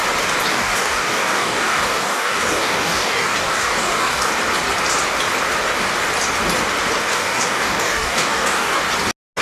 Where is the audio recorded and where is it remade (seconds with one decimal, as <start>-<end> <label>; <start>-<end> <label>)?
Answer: 0.0-0.5 recorded; 0.5-4.3 remade; 4.3-7.1 recorded; 7.1-8.8 remade; 8.8-9.4 recorded